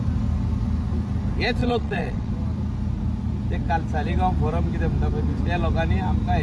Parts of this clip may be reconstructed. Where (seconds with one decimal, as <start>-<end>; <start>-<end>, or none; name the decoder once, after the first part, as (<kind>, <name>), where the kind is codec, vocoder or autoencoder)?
1.6-2.3 (vocoder, WaveNeXt)